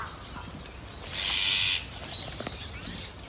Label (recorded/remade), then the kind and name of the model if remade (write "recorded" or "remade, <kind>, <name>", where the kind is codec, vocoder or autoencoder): recorded